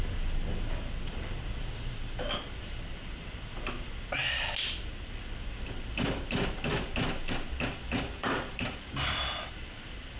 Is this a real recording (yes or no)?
yes